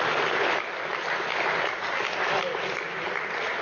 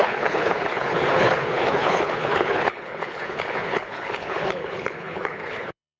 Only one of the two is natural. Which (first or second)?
first